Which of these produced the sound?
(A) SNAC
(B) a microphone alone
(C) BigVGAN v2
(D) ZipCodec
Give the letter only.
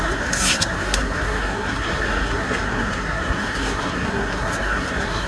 A